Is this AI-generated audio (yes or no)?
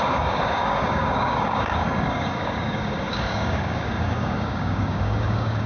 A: yes